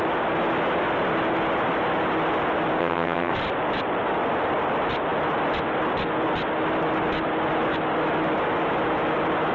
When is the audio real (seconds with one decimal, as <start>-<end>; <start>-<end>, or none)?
0.0-2.8; 3.3-9.5